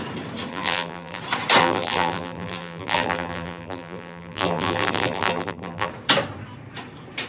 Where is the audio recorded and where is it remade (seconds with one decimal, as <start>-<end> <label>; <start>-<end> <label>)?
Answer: 0.0-0.5 recorded; 0.5-1.2 remade; 1.2-1.6 recorded; 1.6-5.9 remade; 5.9-7.3 recorded

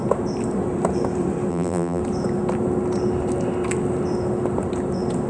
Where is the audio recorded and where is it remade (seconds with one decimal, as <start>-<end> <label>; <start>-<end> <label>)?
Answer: 0.0-1.5 recorded; 1.5-2.0 remade; 2.0-5.3 recorded

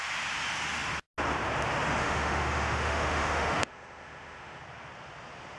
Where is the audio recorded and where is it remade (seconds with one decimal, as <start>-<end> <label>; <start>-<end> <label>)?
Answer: 0.0-2.0 recorded; 2.0-4.6 remade; 4.6-5.6 recorded